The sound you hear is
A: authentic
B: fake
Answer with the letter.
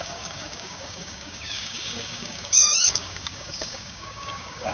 B